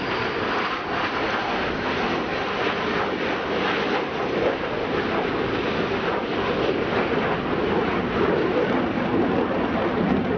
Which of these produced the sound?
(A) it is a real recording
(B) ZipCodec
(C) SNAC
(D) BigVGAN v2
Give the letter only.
A